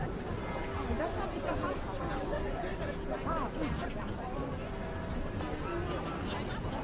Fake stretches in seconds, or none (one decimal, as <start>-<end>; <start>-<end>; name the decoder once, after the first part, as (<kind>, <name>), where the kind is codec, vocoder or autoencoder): none